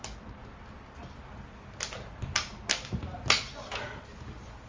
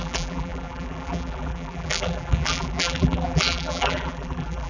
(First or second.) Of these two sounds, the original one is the first